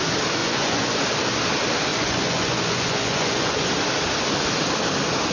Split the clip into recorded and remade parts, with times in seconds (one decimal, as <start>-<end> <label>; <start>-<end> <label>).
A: 0.0-0.4 recorded; 0.4-1.0 remade; 1.0-1.9 recorded; 1.9-3.7 remade; 3.7-5.3 recorded